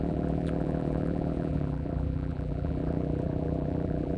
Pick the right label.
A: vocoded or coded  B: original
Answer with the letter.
A